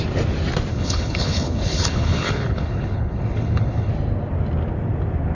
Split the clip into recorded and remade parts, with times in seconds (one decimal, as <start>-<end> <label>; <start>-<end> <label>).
0.0-0.7 recorded; 0.7-3.9 remade; 3.9-5.3 recorded